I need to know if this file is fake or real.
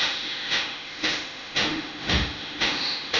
fake